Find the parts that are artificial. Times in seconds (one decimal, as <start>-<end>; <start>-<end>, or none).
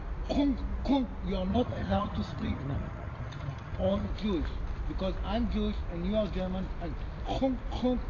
1.5-4.1